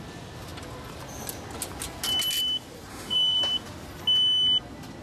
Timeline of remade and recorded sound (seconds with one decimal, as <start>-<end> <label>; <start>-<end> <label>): 0.0-2.9 recorded; 2.9-3.4 remade; 3.4-5.0 recorded